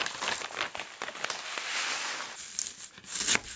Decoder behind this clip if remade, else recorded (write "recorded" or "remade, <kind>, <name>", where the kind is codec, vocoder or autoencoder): recorded